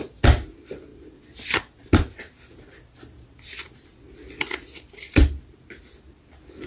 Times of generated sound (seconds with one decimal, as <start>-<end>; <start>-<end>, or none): none